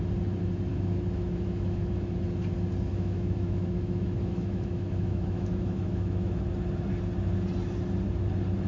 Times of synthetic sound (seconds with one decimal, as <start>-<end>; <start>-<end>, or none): 0.7-2.2; 2.9-6.4